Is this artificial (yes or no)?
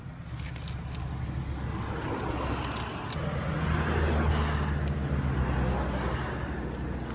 no